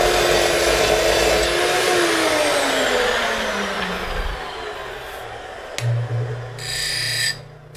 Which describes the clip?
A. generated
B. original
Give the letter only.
B